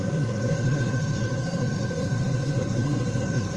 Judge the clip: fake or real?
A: fake